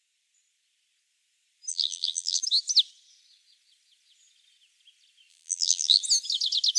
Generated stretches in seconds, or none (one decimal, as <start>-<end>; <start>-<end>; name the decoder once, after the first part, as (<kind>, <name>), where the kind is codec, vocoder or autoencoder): 1.7-2.4 (vocoder, BigVGAN v2); 5.3-6.0